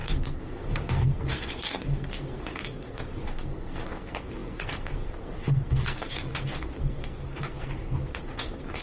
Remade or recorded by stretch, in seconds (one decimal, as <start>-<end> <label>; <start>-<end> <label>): 0.0-8.8 remade